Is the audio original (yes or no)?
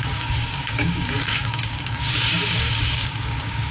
no